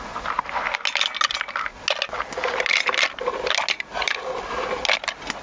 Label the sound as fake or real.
real